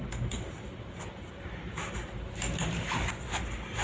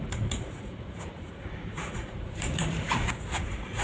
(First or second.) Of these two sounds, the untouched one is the first